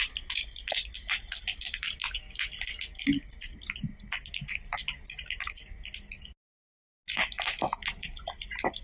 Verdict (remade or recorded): recorded